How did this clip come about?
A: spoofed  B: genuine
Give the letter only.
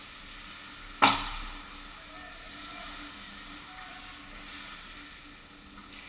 B